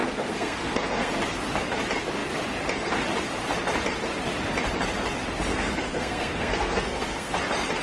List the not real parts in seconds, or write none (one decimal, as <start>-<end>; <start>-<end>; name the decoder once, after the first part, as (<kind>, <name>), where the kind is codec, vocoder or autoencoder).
0.0-1.1 (codec, SNAC); 5.5-7.3